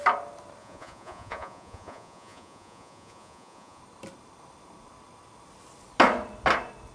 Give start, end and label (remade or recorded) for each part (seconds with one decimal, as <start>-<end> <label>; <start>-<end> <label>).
0.0-0.6 recorded; 0.6-3.8 remade; 3.8-6.9 recorded